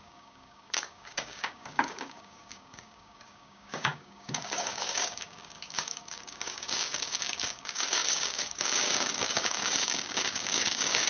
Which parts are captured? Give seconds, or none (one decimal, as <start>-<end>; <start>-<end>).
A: none